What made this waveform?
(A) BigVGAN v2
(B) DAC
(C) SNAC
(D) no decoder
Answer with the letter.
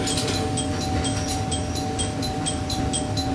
D